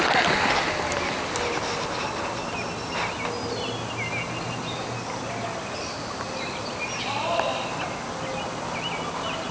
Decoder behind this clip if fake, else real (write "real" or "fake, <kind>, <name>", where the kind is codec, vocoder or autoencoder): real